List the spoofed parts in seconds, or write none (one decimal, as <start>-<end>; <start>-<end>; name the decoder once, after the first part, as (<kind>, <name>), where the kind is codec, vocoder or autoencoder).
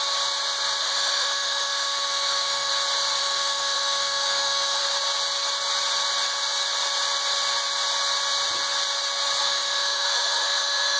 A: 0.8-2.7 (autoencoder, DAC-VAE); 3.2-4.8; 9.4-11.0